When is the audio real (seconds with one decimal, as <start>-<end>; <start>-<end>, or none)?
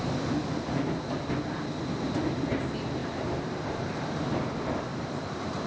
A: 0.0-3.0; 4.1-4.9